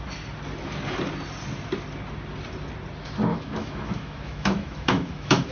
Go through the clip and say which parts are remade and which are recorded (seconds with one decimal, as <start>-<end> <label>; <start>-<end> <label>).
0.0-3.3 recorded; 3.3-5.5 remade